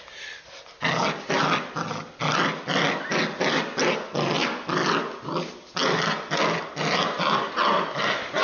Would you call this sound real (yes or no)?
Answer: yes